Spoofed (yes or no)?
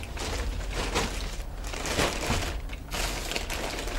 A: no